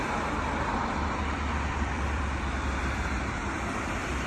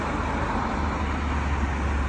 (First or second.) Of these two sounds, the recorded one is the second